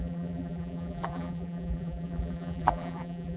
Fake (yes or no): yes